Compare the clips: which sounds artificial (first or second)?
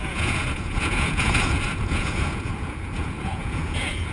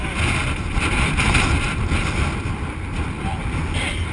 first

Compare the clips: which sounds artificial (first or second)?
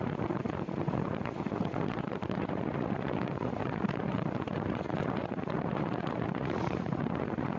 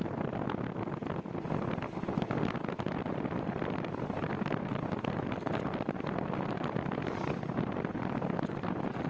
first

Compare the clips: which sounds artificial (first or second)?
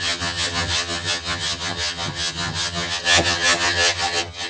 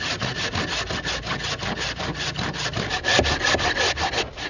first